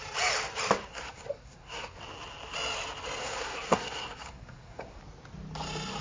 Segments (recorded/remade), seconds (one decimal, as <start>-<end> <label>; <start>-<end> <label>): 0.0-0.9 recorded; 0.9-2.0 remade; 2.0-3.2 recorded; 3.2-5.0 remade; 5.0-6.0 recorded